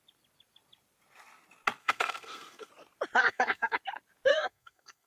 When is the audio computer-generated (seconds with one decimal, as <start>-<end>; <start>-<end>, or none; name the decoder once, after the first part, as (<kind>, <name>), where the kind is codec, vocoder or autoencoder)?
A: 1.8-2.7 (codec, SNAC); 3.2-3.8; 4.3-5.1